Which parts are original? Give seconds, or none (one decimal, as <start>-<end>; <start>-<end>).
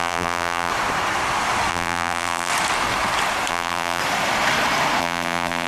0.7-1.7; 2.5-3.5; 4.0-5.0